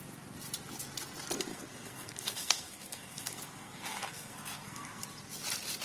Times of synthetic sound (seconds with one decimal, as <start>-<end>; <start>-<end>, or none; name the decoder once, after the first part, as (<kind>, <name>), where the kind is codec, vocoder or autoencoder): 1.5-5.0 (codec, SNAC)